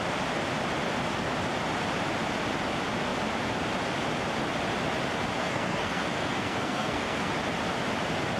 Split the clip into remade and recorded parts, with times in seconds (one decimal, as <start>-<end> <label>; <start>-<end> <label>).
0.0-5.4 recorded; 5.4-7.3 remade; 7.3-8.4 recorded